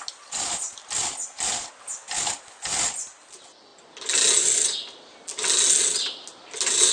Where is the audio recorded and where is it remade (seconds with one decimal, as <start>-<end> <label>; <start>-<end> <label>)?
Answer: 0.0-6.9 recorded